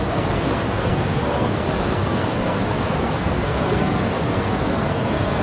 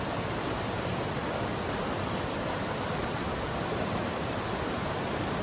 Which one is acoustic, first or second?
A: second